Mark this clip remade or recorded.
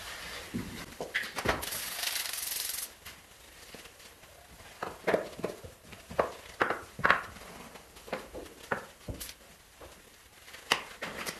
remade